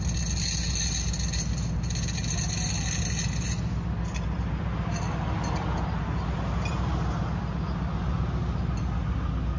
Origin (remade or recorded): recorded